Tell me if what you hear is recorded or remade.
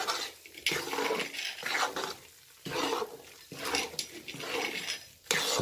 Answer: recorded